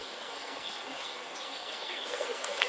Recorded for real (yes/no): no